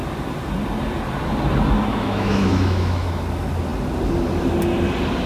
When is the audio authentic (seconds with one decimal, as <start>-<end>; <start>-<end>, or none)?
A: 0.0-1.9; 3.2-5.3